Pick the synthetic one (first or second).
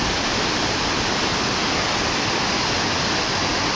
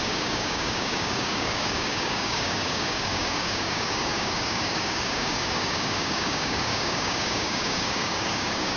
second